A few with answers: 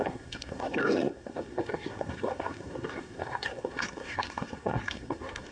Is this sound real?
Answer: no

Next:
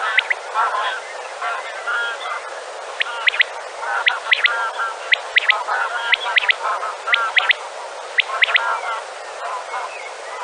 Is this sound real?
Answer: yes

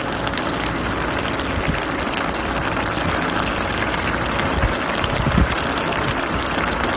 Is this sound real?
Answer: yes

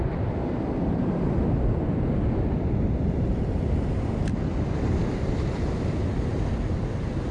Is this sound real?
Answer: yes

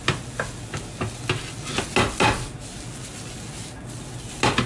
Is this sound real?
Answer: yes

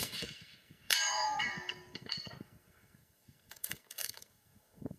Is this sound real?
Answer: no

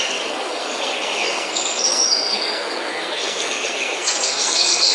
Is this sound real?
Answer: no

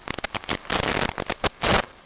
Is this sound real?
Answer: yes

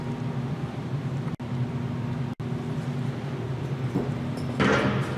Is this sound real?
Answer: yes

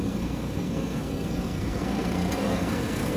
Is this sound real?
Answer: no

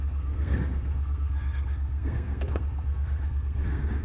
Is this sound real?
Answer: no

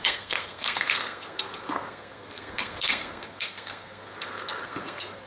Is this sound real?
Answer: no